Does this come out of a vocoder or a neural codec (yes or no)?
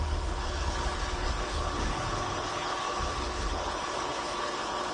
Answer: yes